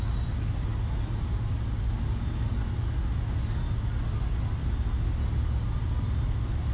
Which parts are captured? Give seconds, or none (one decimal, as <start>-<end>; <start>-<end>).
0.0-6.7